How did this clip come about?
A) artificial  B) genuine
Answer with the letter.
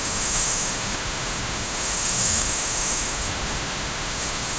A